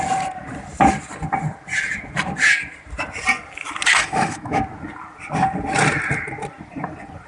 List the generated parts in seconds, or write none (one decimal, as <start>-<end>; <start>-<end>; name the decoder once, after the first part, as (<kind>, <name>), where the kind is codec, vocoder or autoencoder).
4.0-4.6 (autoencoder, DAC-VAE)